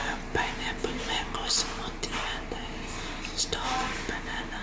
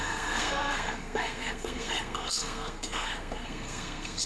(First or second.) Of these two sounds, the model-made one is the second